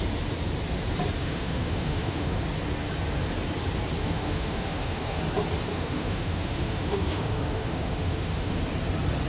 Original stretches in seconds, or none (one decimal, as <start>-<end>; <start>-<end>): 0.0-1.2; 2.4-4.0; 5.2-5.7; 8.6-9.3